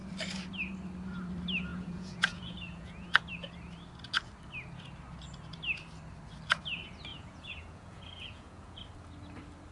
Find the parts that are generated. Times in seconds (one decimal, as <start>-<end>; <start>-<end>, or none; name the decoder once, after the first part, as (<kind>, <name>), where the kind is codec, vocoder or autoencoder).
1.7-3.3 (vocoder, Vocos); 7.1-8.8